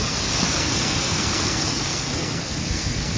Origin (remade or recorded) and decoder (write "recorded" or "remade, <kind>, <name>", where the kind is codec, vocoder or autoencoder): remade, codec, SNAC